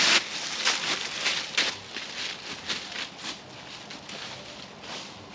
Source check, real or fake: real